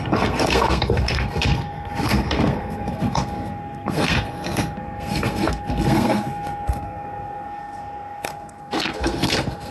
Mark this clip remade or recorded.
remade